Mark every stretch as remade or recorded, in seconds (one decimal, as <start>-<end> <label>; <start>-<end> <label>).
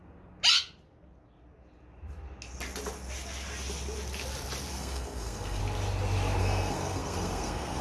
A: 0.0-4.7 recorded; 4.7-5.6 remade; 5.6-6.4 recorded; 6.4-7.8 remade